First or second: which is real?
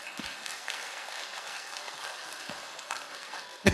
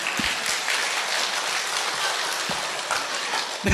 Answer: second